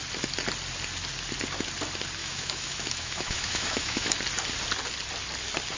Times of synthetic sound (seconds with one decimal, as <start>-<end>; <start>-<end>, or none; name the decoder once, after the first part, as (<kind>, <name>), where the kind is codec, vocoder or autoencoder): 2.2-4.1 (autoencoder, DAC-VAE)